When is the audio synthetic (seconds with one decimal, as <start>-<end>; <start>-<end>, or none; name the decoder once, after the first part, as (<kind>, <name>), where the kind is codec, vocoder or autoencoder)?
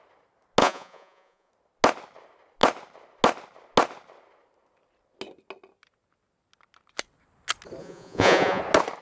0.6-1.5 (vocoder, Vocos); 7.8-8.6